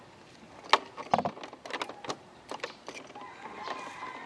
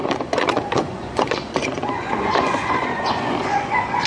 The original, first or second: first